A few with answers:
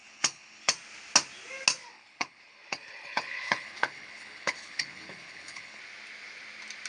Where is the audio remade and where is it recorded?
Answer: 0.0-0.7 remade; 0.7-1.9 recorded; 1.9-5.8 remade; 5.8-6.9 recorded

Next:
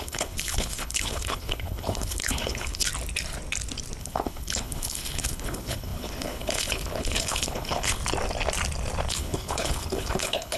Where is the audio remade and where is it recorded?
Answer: 0.0-2.9 remade; 2.9-4.0 recorded; 4.0-8.0 remade; 8.0-9.1 recorded; 9.1-10.6 remade